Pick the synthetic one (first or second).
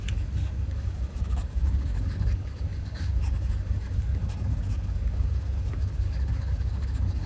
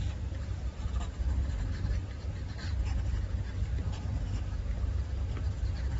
first